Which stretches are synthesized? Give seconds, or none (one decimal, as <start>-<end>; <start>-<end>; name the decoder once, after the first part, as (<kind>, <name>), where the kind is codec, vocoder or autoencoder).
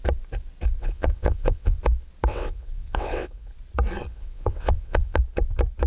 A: 0.8-1.8 (vocoder, WaveNeXt); 2.3-3.5; 4.1-5.2